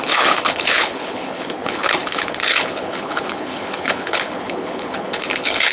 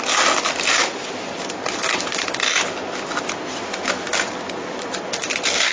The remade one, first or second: first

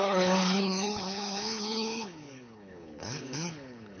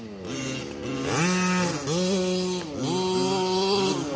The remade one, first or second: first